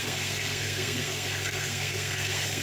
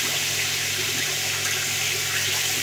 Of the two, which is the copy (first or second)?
first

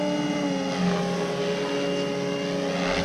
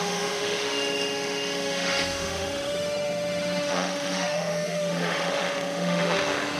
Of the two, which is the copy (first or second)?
second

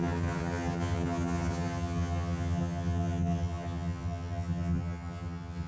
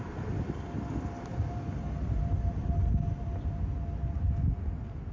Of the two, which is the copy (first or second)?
first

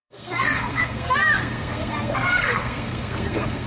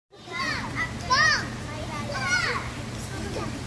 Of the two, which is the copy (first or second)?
first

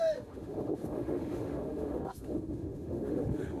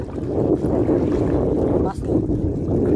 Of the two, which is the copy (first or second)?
first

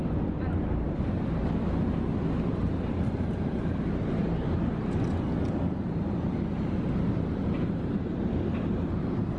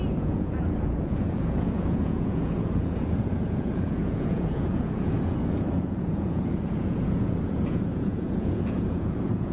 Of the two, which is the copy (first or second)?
second